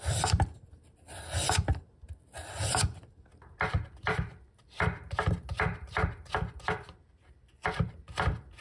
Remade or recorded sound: recorded